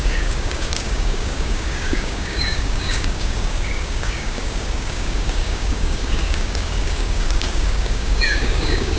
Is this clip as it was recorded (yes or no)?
no